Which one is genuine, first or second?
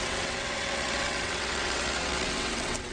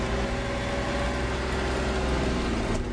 second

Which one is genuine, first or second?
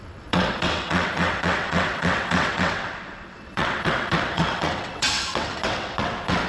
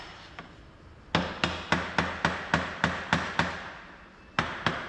second